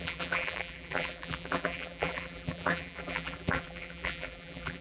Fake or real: fake